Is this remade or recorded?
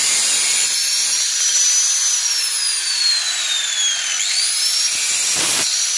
recorded